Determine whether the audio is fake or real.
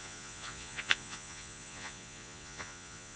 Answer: fake